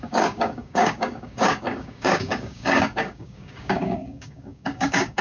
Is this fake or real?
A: fake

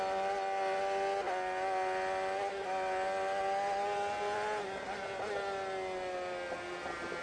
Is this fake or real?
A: real